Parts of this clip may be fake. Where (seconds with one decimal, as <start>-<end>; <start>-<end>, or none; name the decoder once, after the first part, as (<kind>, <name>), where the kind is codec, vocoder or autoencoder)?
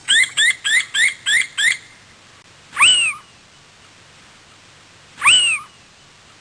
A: 0.0-0.5 (autoencoder, DAC-VAE)